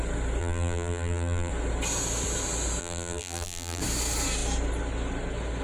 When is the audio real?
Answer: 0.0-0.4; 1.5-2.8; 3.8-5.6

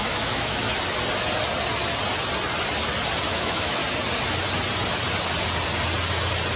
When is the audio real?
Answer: 0.7-3.3; 3.8-6.6

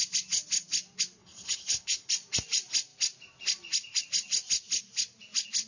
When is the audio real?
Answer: 0.0-1.2; 2.1-5.7

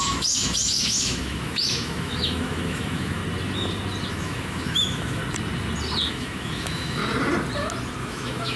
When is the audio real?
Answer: 3.2-4.1; 5.2-6.1; 7.0-8.0

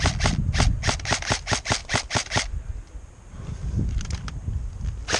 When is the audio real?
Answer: 0.0-5.2

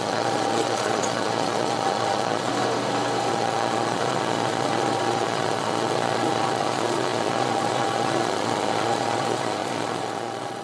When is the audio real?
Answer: 2.5-3.3

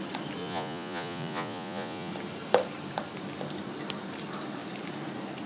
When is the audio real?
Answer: 0.0-0.4; 2.1-5.5